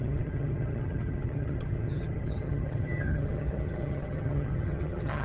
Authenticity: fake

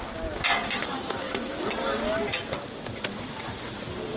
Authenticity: real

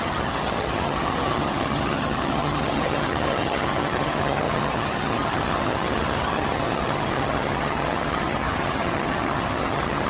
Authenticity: fake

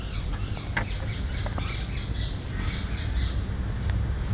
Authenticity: real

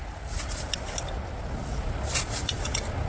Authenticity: real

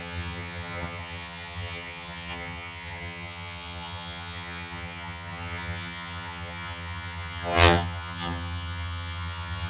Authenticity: fake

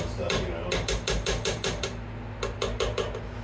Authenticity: real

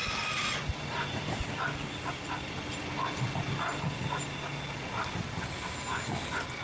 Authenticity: real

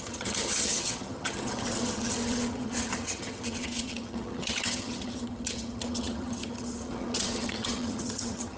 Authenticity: fake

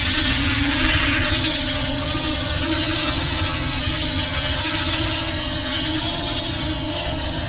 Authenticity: fake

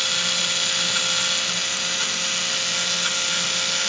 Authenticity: real